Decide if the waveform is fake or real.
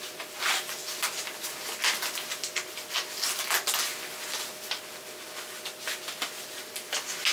real